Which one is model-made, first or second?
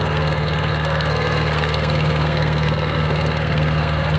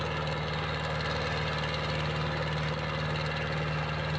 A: first